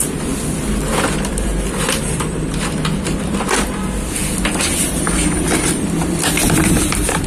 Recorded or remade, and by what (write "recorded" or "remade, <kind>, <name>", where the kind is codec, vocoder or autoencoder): remade, vocoder, BigVGAN v2